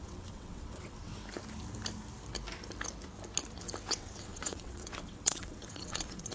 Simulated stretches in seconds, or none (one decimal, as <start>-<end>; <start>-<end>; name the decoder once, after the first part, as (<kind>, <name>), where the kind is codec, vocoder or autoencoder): 0.0-1.1 (vocoder, WaveNeXt); 3.9-6.3